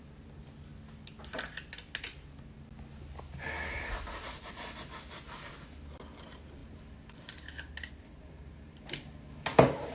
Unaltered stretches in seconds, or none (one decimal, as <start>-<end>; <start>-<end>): 0.0-9.9